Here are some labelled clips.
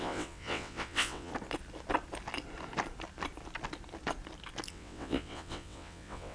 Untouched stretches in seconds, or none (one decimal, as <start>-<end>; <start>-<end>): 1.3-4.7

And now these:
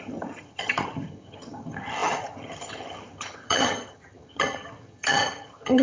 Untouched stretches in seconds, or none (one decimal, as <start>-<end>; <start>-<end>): none

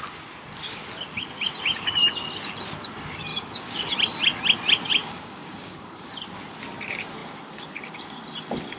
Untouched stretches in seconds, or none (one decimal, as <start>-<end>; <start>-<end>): 0.0-3.3; 3.9-5.0; 6.1-8.8